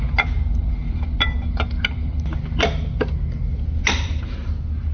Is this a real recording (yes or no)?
yes